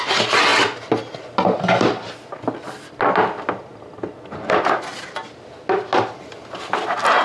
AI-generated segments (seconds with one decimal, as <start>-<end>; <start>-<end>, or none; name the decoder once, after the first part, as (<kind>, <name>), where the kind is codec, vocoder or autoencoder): none